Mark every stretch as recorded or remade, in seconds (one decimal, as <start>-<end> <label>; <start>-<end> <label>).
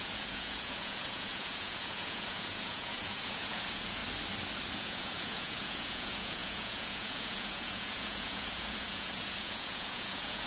0.0-4.0 remade; 4.0-4.7 recorded; 4.7-10.5 remade